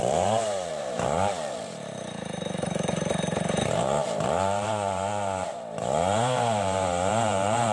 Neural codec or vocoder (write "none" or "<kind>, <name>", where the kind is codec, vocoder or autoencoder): vocoder, BigVGAN v2